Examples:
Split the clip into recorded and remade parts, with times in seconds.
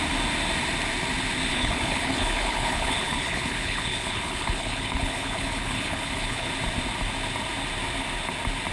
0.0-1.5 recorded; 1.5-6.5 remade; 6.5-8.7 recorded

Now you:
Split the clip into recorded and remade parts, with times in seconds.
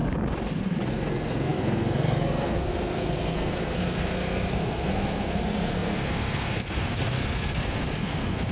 0.0-0.9 recorded; 0.9-8.5 remade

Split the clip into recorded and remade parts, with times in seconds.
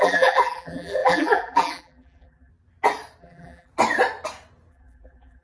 0.0-2.5 remade; 2.5-3.2 recorded; 3.2-3.7 remade; 3.7-4.7 recorded; 4.7-5.4 remade